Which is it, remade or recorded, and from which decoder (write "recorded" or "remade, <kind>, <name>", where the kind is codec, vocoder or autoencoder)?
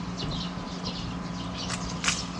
recorded